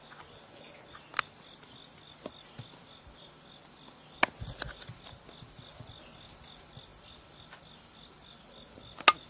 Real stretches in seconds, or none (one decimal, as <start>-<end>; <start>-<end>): 0.0-9.3